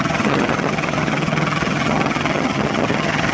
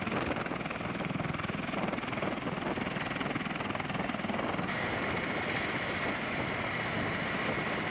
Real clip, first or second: second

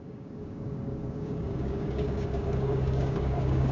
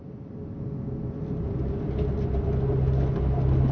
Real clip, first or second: second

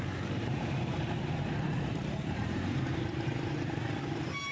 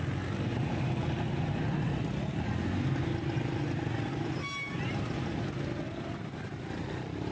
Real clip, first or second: second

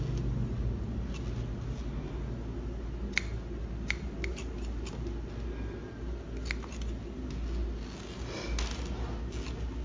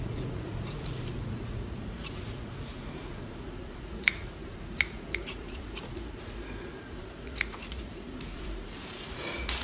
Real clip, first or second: first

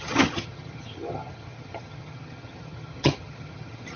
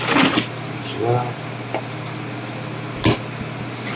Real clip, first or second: second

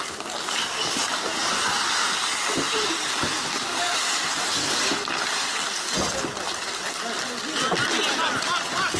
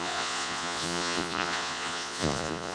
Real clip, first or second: first